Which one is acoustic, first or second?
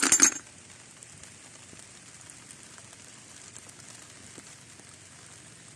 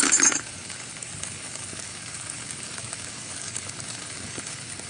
first